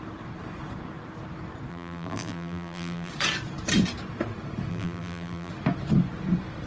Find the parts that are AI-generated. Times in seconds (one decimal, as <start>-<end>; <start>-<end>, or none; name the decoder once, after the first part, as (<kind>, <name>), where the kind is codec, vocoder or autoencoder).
1.7-3.1 (vocoder, BigVGAN v2); 4.7-5.5